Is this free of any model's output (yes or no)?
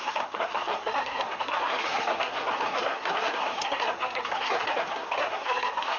no